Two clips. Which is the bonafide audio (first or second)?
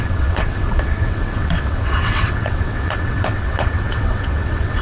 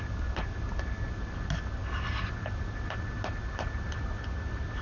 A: second